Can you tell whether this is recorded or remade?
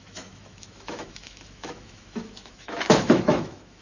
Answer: remade